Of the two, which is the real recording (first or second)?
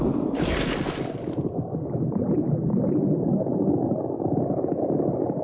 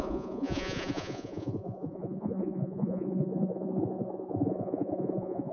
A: first